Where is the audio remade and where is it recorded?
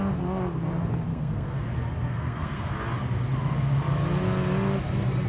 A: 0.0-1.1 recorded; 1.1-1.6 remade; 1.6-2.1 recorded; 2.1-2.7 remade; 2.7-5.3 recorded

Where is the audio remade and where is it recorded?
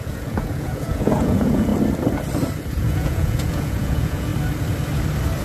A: 0.0-1.7 remade; 1.7-2.8 recorded; 2.8-4.3 remade; 4.3-5.4 recorded